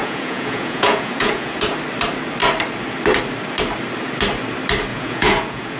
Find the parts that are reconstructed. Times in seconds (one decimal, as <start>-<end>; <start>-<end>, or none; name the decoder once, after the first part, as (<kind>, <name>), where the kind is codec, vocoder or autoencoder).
0.0-1.6 (vocoder, Vocos); 4.9-5.8